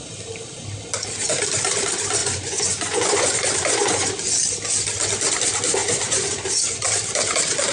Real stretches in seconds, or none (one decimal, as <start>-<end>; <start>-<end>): 0.0-2.2; 4.1-5.8; 6.5-7.7